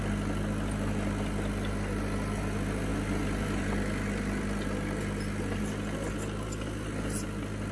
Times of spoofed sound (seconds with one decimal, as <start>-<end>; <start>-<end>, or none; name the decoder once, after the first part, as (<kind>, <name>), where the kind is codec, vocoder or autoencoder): none